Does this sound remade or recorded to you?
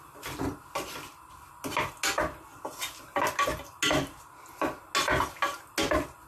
recorded